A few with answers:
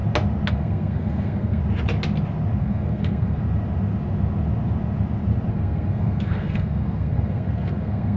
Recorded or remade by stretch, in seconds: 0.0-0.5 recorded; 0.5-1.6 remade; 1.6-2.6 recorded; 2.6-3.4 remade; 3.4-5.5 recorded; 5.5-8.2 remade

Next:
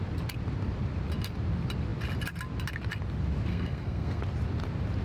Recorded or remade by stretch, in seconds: 0.0-3.5 recorded; 3.5-4.2 remade; 4.2-5.0 recorded

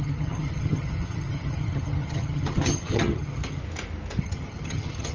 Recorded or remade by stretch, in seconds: 0.0-3.6 remade; 3.6-4.2 recorded; 4.2-5.1 remade

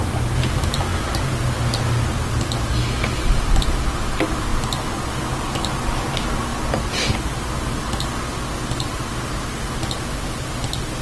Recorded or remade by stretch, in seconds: 0.0-11.0 recorded

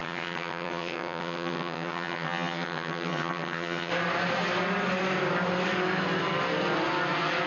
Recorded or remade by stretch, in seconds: 0.0-3.9 remade; 3.9-7.5 recorded